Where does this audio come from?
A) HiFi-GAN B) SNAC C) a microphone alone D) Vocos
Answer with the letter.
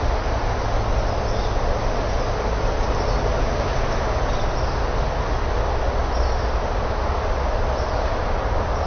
C